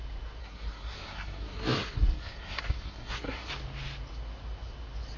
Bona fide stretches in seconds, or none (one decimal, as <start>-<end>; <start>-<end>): 0.0-0.4; 3.5-5.2